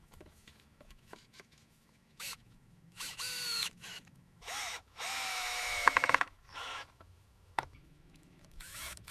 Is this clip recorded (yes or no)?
no